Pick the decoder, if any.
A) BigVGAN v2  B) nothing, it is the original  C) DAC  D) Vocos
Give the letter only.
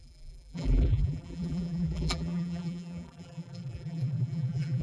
A